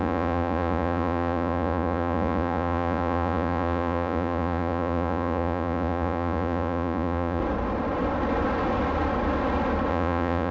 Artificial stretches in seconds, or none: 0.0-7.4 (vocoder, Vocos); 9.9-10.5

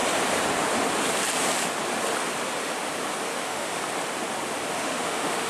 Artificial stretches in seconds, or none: 3.3-3.8 (autoencoder, DAC-VAE); 4.8-5.5

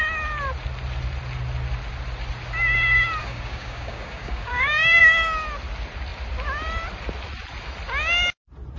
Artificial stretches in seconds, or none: 3.2-5.0 (codec, DAC)

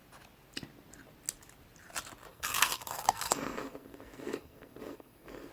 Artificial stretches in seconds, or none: 2.3-5.5 (codec, SNAC)

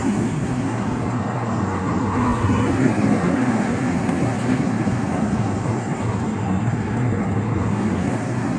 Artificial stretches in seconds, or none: 0.0-8.6 (codec, SNAC)

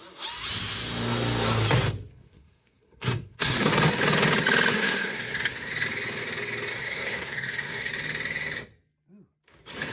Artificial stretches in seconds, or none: 2.2-3.7 (codec, SNAC); 4.7-5.7; 6.7-7.9